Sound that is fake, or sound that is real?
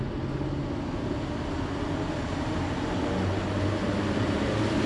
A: real